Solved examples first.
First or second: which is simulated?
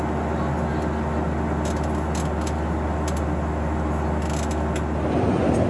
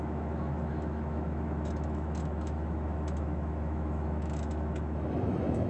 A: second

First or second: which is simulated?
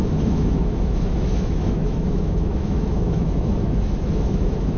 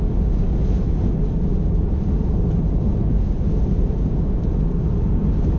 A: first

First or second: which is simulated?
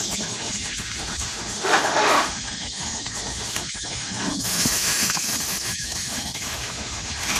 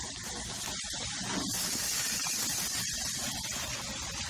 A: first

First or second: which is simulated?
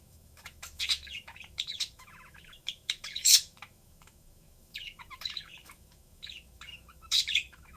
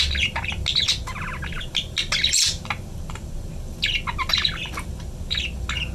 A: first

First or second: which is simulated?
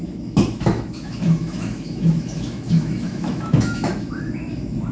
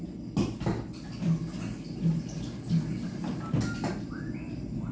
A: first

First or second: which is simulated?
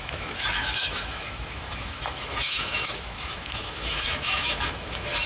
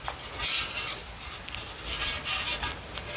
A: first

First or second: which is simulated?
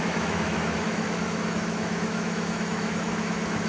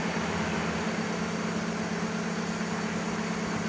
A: first